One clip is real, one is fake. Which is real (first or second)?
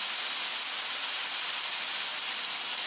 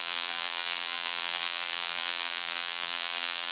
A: first